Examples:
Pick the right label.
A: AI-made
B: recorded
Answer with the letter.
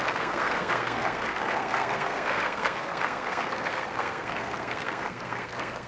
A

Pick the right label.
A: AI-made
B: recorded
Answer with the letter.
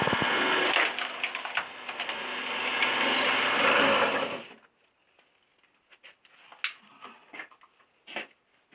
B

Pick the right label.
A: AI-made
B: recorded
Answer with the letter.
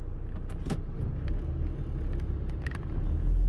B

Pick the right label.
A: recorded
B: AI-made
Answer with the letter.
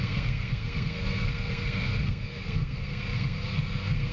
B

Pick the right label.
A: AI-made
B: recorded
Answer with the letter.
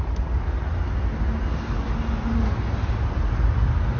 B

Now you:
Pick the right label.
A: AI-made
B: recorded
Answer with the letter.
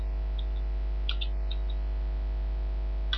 B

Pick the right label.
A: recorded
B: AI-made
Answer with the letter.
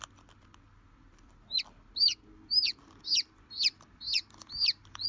A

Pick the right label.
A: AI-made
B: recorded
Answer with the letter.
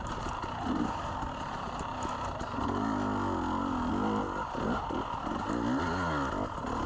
B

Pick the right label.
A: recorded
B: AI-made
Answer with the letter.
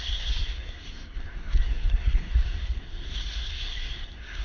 B